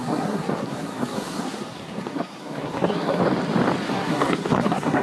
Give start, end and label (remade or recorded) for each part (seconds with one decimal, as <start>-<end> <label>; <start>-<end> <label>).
0.0-3.2 remade; 3.2-3.9 recorded; 3.9-5.0 remade